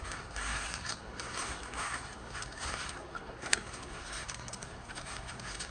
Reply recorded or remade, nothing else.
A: remade